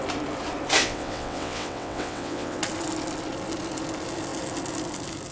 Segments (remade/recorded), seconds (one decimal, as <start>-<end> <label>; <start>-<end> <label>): 0.0-0.8 recorded; 0.8-2.6 remade; 2.6-5.3 recorded